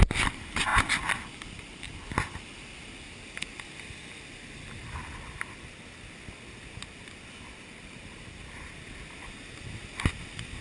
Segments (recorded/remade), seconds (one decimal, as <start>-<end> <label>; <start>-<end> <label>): 0.0-10.6 recorded